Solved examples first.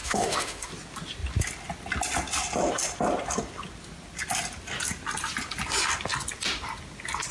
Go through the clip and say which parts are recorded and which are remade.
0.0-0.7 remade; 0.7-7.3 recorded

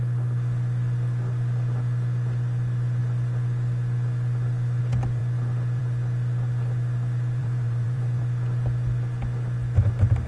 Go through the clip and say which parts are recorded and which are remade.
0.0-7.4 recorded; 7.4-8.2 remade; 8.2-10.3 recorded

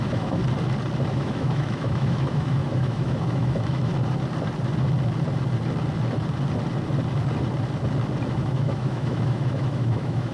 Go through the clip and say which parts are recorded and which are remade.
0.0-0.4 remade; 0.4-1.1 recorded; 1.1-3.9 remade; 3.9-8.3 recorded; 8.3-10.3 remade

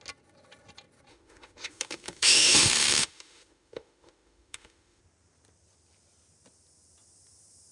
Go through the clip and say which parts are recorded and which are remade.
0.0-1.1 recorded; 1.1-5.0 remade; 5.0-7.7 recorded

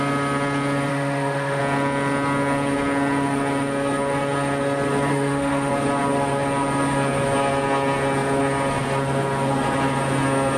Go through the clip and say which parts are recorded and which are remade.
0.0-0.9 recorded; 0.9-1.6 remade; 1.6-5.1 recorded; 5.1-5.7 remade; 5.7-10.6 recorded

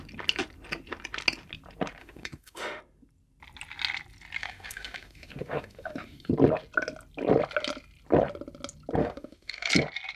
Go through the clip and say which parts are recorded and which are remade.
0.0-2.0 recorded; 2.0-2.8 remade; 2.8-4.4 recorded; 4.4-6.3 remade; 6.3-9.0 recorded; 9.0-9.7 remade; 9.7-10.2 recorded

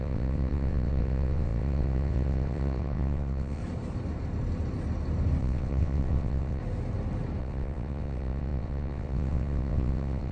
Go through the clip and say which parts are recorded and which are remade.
0.0-3.6 remade; 3.6-5.4 recorded; 5.4-6.6 remade; 6.6-7.4 recorded; 7.4-10.3 remade